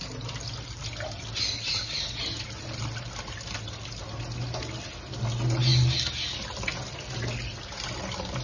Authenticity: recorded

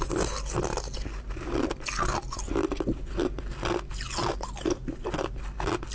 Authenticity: recorded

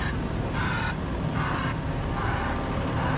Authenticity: recorded